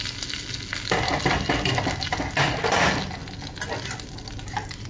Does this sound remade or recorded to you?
recorded